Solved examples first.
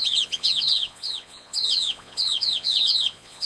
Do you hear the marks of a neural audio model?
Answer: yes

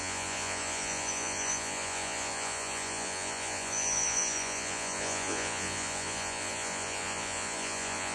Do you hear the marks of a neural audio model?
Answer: yes